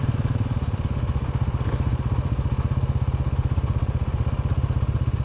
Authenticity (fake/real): real